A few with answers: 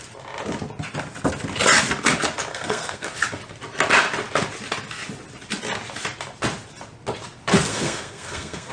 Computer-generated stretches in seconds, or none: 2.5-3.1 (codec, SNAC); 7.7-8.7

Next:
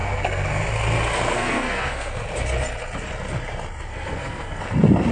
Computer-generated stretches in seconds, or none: 0.0-0.6 (codec, SNAC); 1.3-2.1; 3.9-4.6